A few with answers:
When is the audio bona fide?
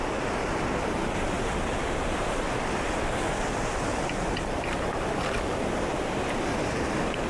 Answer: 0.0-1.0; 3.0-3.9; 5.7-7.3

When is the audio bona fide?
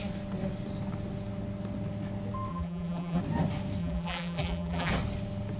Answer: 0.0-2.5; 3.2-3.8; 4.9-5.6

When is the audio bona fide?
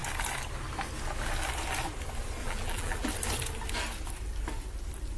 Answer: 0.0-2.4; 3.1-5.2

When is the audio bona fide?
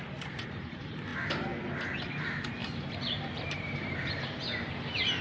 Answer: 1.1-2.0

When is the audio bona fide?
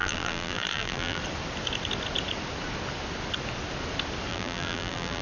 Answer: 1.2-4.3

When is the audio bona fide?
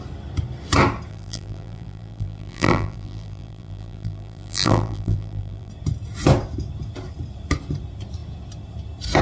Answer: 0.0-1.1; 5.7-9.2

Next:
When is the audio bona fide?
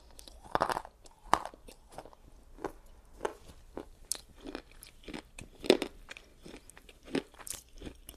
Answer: 0.0-8.2